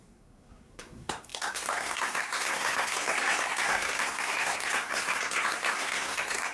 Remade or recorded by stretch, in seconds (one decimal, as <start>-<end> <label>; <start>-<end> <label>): 0.0-6.5 remade